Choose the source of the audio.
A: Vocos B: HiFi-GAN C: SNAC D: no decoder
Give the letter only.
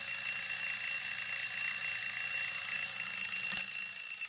D